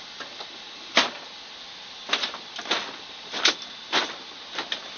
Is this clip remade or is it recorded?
recorded